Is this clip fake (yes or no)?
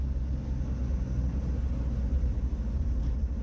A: no